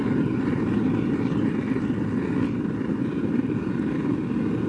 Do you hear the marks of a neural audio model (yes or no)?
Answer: no